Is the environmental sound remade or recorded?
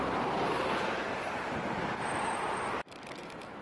recorded